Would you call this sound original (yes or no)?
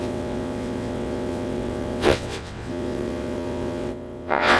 no